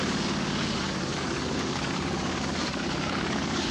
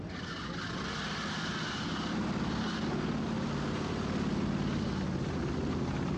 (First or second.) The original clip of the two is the second